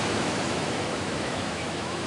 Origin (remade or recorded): remade